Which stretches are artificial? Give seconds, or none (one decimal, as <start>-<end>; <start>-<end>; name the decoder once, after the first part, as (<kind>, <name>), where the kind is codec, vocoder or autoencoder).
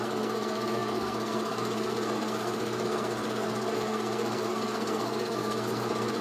0.0-6.2 (codec, SNAC)